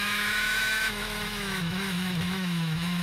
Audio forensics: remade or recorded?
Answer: remade